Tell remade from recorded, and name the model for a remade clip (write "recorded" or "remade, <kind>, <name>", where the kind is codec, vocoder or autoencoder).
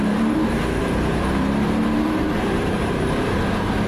remade, vocoder, BigVGAN v2